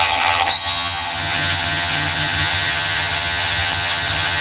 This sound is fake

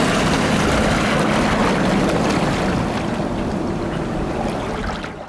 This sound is real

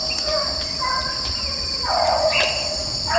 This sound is real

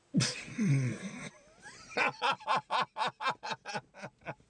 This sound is real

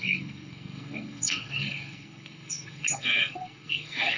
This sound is fake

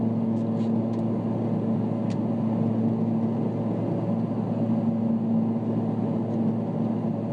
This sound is real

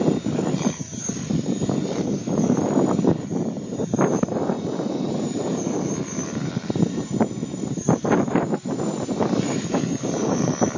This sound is fake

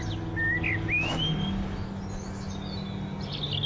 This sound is real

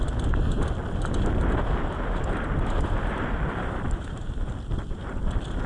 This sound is real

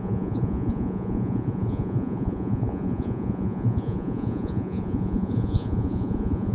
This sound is fake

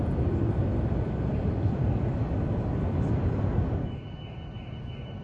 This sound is real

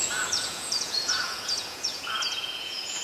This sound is fake